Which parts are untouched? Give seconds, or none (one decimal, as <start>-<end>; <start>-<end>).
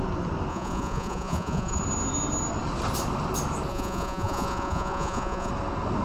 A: 0.0-0.5; 1.8-3.7; 5.5-6.0